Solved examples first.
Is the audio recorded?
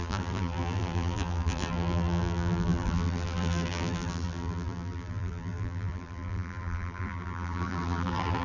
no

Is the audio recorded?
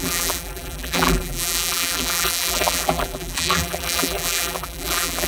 no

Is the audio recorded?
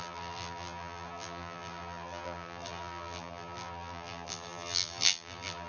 no